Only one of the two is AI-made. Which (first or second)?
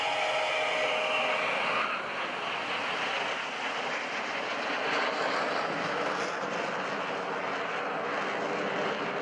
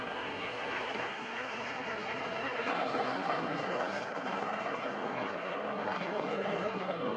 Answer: second